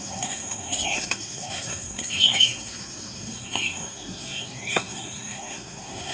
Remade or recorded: remade